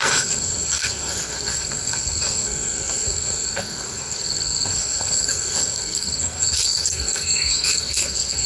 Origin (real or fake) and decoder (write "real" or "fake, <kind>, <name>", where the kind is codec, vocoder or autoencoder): fake, codec, SNAC